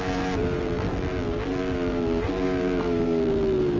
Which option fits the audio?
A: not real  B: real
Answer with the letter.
A